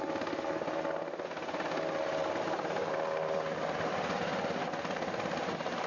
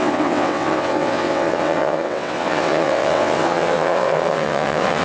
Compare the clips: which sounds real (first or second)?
first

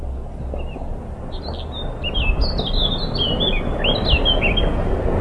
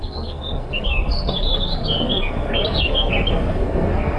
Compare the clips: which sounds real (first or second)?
first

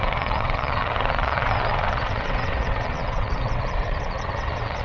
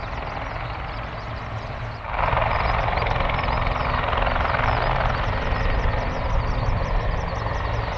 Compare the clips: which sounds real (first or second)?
second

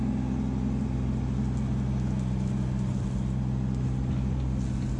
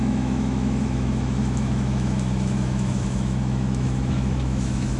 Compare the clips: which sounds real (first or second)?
first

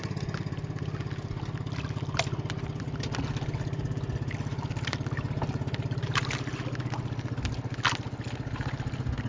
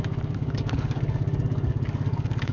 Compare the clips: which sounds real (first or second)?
first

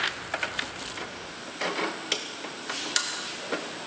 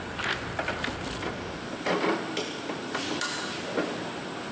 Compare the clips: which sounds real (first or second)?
first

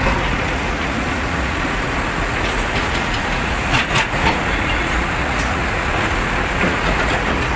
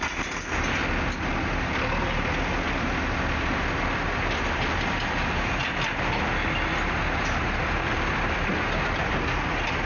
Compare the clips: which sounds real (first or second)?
second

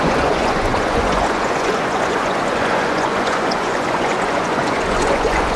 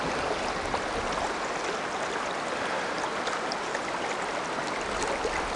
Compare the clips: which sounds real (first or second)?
second